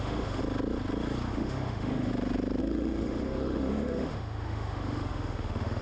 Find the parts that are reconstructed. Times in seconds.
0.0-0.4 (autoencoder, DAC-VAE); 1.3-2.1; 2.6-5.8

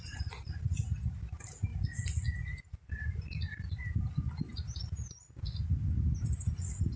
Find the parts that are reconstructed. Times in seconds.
none

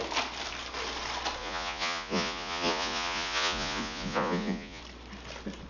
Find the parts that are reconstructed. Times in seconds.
1.4-4.8 (vocoder, Vocos)

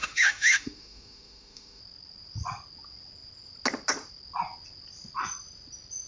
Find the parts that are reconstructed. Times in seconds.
0.0-1.8 (autoencoder, DAC-VAE)

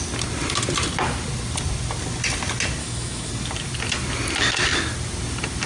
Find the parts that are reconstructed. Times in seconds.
2.8-3.3 (autoencoder, DAC-VAE)